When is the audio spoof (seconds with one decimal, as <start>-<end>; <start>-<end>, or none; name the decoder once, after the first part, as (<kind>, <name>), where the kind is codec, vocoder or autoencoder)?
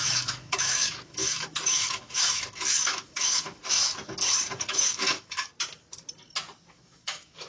0.0-3.9 (autoencoder, DAC-VAE); 4.6-5.5; 6.7-7.5